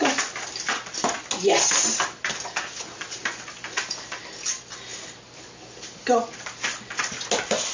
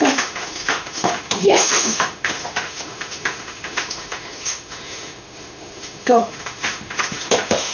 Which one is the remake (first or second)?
second